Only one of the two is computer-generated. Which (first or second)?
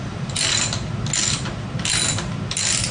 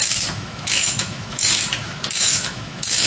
second